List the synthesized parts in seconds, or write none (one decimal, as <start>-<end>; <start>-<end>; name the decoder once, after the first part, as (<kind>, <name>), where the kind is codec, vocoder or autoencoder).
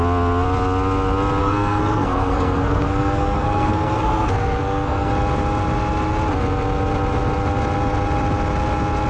1.4-5.1 (codec, SNAC)